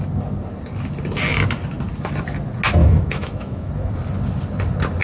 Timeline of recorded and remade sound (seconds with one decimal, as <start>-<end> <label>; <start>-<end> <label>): 0.0-2.8 recorded; 2.8-3.7 remade; 3.7-5.0 recorded